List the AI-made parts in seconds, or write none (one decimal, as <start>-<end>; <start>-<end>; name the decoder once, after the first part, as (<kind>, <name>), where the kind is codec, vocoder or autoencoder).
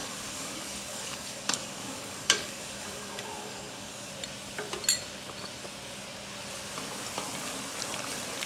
0.0-4.1 (codec, DAC)